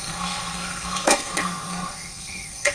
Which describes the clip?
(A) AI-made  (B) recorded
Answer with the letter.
A